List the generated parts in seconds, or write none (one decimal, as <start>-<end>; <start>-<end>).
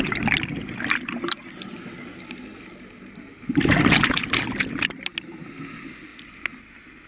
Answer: none